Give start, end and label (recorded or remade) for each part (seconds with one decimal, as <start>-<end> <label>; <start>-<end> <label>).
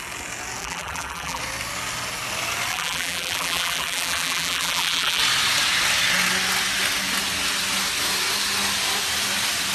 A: 0.0-0.6 recorded; 0.6-1.4 remade; 1.4-2.7 recorded; 2.7-5.2 remade; 5.2-9.7 recorded